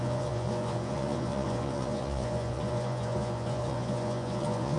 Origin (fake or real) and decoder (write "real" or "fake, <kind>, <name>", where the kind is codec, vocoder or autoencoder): fake, vocoder, Vocos